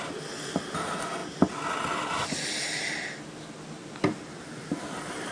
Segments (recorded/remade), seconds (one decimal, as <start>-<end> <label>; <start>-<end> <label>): 0.0-5.3 recorded